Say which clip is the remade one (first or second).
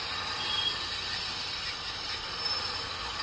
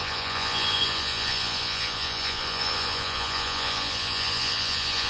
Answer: second